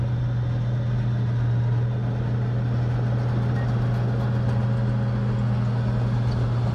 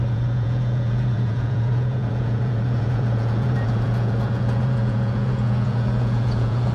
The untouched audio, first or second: first